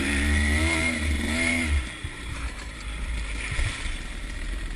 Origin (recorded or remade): remade